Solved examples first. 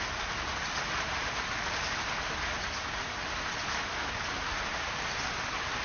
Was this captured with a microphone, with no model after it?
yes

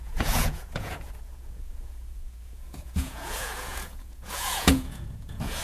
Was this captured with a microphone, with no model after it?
no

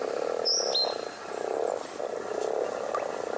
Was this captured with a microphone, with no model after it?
yes